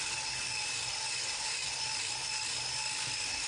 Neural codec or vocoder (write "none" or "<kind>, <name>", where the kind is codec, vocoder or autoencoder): vocoder, BigVGAN v2